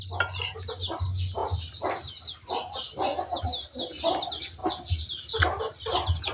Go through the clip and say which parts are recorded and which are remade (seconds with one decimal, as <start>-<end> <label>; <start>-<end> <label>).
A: 0.0-6.3 recorded